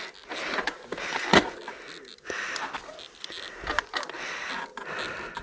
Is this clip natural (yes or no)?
yes